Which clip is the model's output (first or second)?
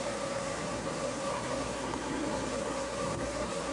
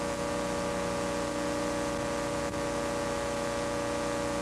first